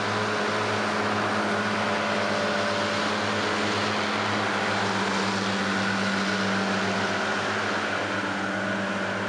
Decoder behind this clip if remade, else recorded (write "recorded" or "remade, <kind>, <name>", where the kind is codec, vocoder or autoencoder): recorded